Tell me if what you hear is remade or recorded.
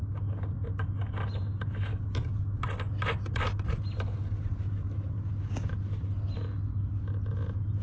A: recorded